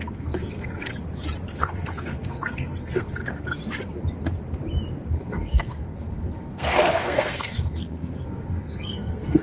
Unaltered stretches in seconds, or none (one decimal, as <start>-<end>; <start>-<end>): 0.9-1.6; 3.6-5.1